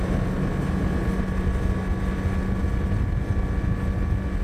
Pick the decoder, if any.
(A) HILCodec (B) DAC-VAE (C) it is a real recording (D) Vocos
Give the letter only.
C